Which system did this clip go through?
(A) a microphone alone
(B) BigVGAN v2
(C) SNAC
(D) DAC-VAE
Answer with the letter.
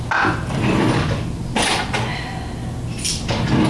A